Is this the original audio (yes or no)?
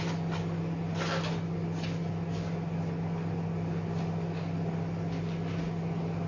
yes